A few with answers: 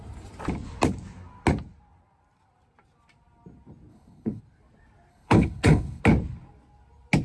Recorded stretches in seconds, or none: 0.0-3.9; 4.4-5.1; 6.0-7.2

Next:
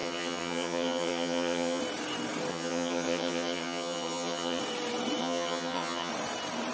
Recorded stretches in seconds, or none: 1.8-2.5; 4.6-5.2; 6.1-6.7

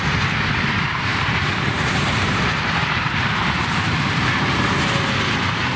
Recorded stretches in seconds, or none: 0.0-1.1; 4.3-5.8